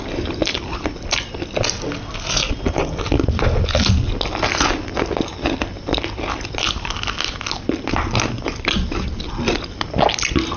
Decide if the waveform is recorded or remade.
recorded